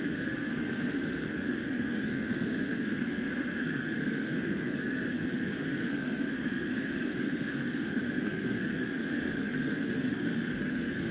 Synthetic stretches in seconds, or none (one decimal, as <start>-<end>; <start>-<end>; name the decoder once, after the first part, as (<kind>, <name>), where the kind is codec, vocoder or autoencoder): 0.0-11.1 (codec, SNAC)